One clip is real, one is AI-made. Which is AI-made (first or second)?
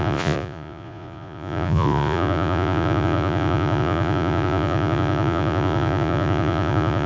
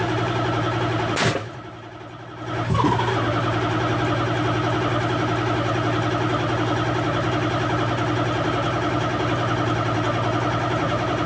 first